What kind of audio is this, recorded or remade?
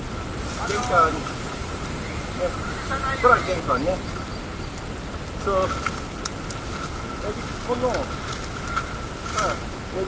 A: recorded